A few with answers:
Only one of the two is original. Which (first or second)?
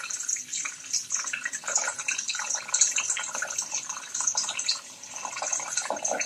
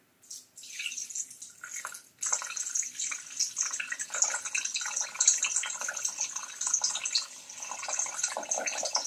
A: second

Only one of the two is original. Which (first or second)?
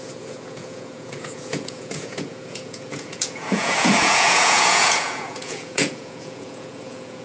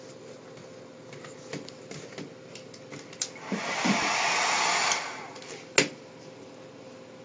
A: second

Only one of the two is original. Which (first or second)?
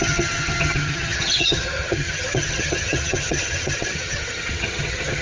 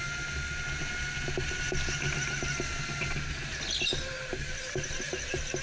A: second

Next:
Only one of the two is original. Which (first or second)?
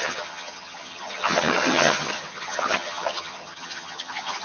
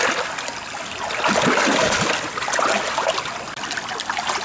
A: second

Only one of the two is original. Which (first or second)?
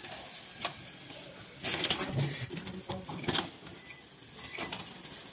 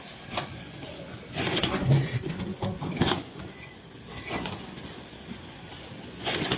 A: first